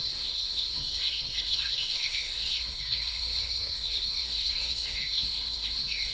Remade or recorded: remade